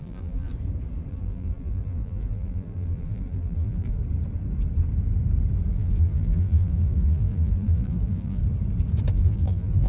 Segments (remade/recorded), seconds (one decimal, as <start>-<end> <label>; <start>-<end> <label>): 0.0-0.5 remade; 0.5-1.1 recorded; 1.1-4.0 remade; 4.0-5.7 recorded; 5.7-8.4 remade; 8.4-9.1 recorded; 9.1-9.9 remade